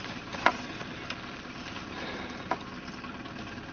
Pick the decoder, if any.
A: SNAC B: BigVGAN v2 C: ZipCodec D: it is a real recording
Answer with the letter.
D